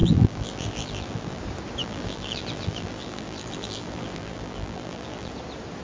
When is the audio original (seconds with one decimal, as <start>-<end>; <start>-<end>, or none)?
1.4-1.8; 5.3-5.8